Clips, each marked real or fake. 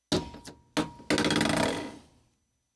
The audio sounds real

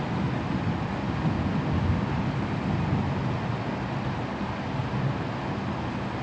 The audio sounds real